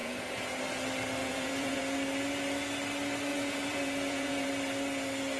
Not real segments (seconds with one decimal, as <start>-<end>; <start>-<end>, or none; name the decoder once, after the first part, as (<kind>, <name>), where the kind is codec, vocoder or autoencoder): 0.0-0.6 (vocoder, Vocos); 1.2-1.8; 3.3-4.5